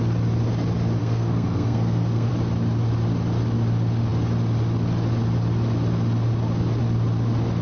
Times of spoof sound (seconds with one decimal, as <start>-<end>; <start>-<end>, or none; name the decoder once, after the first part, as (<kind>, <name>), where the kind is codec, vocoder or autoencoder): 1.0-2.3 (codec, SNAC)